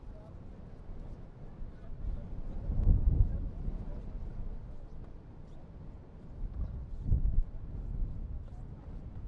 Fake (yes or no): no